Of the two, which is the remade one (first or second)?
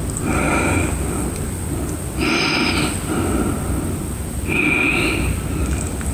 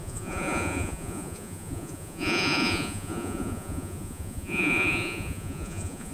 second